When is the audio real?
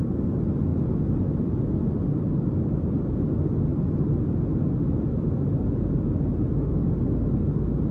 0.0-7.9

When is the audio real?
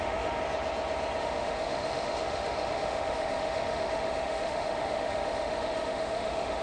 0.4-1.2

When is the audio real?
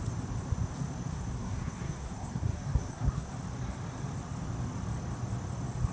0.0-1.1; 3.3-5.9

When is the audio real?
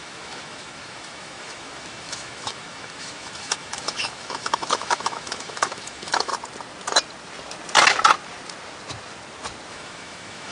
6.3-9.7